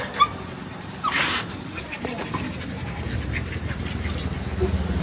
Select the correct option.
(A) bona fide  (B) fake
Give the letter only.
B